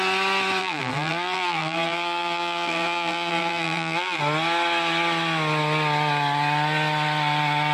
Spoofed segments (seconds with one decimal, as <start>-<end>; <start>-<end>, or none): 0.6-4.2